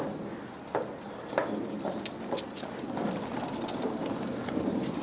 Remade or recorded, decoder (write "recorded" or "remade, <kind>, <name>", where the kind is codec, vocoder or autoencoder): recorded